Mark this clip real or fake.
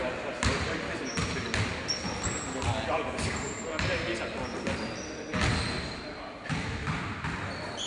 real